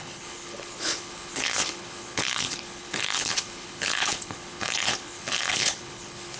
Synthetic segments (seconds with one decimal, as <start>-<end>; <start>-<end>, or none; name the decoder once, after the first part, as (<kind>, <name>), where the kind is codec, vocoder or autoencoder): 0.0-6.4 (codec, HILCodec)